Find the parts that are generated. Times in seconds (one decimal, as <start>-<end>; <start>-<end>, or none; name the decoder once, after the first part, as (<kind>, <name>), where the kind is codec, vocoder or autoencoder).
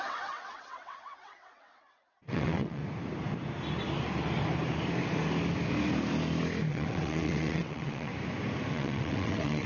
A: 0.0-2.8 (vocoder, WaveNeXt); 6.7-8.1; 8.7-9.7